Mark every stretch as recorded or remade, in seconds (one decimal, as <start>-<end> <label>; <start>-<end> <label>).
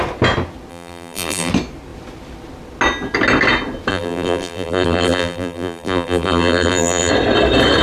0.0-0.7 recorded; 0.7-1.5 remade; 1.5-3.9 recorded; 3.9-7.1 remade; 7.1-7.8 recorded